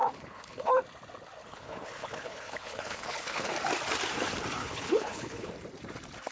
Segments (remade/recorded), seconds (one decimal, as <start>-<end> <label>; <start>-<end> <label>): 0.0-0.7 remade; 0.7-1.4 recorded; 1.4-3.5 remade; 3.5-4.6 recorded; 4.6-5.5 remade; 5.5-6.3 recorded